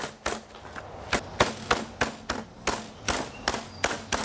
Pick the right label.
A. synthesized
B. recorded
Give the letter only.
B